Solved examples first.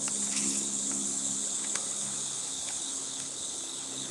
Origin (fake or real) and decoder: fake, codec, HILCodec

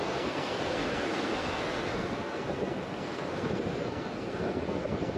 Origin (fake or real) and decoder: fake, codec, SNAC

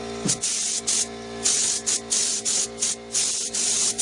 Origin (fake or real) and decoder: real